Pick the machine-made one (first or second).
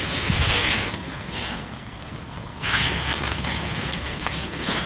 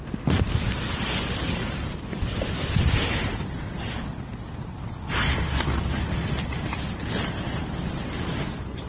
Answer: first